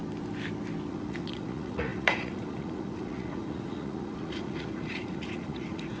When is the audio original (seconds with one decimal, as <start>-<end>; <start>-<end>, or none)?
0.0-0.9